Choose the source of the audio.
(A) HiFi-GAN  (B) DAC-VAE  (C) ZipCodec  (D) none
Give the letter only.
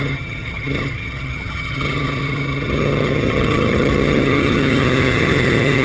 A